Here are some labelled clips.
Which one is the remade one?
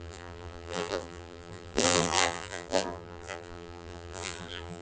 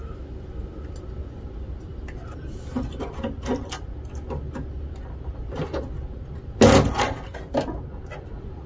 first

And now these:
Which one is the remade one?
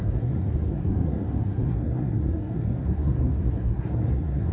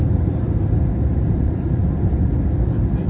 first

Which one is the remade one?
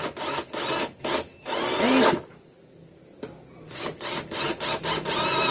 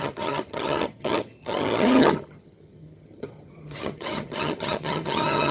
second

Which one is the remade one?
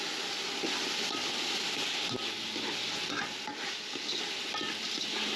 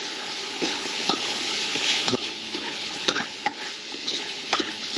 second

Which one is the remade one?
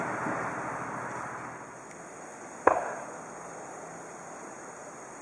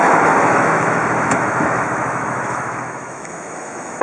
second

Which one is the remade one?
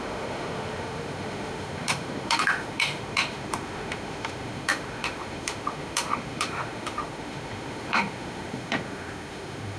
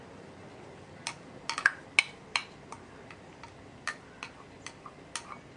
first